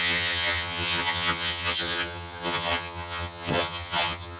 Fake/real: fake